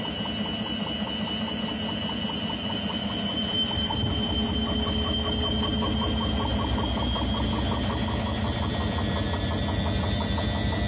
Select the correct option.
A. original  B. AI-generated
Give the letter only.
A